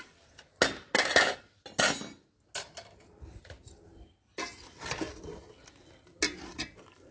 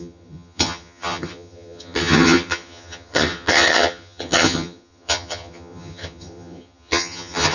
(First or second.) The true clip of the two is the first